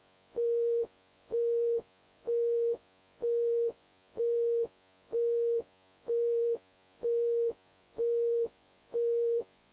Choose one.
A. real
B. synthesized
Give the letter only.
B